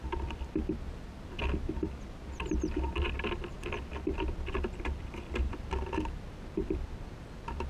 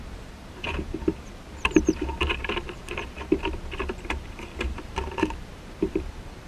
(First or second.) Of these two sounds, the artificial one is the second